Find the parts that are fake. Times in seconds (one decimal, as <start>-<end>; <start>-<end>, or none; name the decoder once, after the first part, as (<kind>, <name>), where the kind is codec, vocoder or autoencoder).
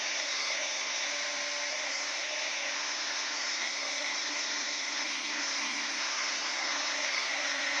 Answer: 0.0-1.1 (codec, SNAC); 1.7-7.8